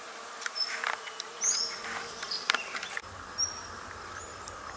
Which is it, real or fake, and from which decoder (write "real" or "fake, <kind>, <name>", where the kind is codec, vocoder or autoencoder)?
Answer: real